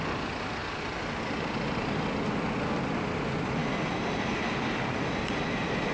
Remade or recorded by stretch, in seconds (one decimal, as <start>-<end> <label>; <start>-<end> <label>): 0.0-5.9 recorded